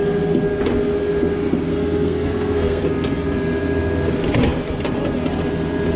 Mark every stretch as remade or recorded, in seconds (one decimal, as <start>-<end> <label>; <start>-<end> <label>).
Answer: 0.0-1.7 recorded; 1.7-2.8 remade; 2.8-6.0 recorded

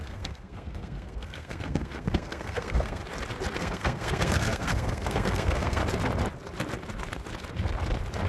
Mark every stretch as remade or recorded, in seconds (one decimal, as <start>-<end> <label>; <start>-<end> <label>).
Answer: 0.0-3.0 remade; 3.0-3.6 recorded; 3.6-5.8 remade; 5.8-8.3 recorded